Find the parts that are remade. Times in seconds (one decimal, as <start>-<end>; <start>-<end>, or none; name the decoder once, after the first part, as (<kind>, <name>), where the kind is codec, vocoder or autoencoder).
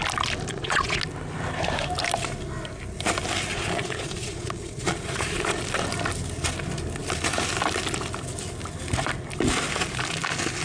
0.5-1.0 (vocoder, Vocos); 3.5-5.6